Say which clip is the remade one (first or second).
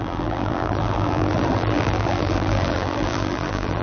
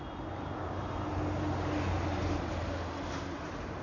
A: first